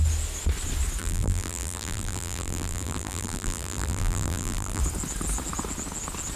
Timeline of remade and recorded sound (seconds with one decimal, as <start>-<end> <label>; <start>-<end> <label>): 0.0-1.0 recorded; 1.0-4.8 remade; 4.8-6.4 recorded